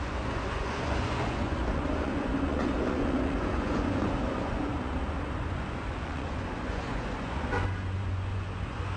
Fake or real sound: fake